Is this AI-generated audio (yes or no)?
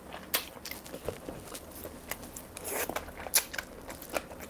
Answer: no